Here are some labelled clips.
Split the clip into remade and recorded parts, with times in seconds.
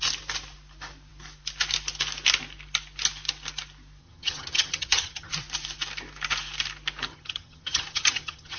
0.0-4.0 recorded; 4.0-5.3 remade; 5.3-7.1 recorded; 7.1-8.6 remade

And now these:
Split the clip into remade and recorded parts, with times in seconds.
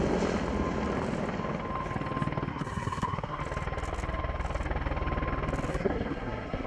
0.0-2.5 recorded; 2.5-3.4 remade; 3.4-5.7 recorded; 5.7-6.7 remade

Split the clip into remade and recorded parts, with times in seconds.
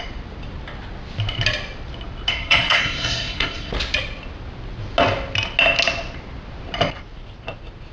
0.0-2.3 recorded; 2.3-3.7 remade; 3.7-7.9 recorded